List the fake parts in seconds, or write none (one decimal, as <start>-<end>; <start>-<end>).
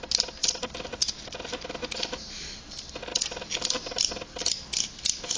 0.4-2.6